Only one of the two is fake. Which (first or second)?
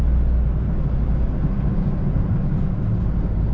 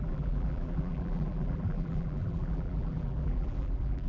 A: second